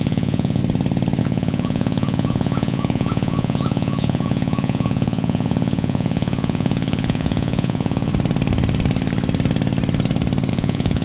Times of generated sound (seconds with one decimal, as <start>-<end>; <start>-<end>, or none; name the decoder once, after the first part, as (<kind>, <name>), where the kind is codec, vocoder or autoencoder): 0.0-0.6 (vocoder, Vocos); 1.2-8.1; 10.5-11.0

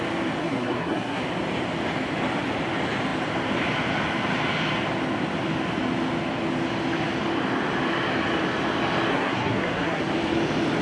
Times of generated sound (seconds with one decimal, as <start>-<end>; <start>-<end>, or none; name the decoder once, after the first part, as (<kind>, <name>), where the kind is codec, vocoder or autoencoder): 0.4-1.2 (codec, SNAC); 9.1-10.0

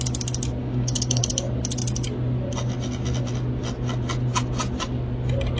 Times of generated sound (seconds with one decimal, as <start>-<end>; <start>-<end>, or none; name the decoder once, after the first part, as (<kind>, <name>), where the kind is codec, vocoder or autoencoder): 0.6-1.2 (codec, DAC)

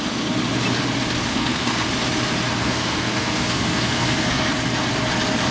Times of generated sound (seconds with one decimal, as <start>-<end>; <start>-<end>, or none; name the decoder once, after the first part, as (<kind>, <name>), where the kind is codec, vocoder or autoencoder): 1.3-1.9 (codec, SNAC); 2.6-4.5

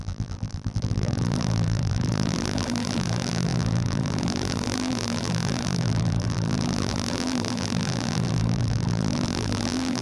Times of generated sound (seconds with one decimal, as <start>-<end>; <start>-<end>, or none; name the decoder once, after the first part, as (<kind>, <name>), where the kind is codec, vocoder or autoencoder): 0.0-10.0 (vocoder, BigVGAN v2)

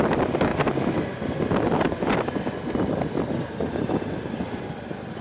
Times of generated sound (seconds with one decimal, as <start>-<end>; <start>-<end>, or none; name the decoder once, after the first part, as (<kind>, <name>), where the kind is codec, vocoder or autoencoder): none

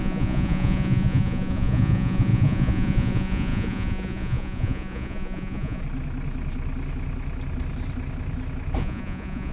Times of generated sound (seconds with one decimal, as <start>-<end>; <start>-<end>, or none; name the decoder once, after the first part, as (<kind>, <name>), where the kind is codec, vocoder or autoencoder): 0.0-5.8 (vocoder, Vocos); 8.8-9.5